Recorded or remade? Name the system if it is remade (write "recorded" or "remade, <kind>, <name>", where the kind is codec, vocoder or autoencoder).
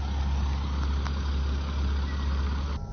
recorded